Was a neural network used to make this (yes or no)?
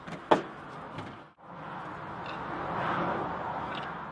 no